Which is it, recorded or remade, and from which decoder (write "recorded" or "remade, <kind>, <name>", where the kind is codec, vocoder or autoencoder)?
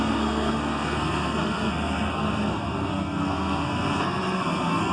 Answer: remade, codec, SNAC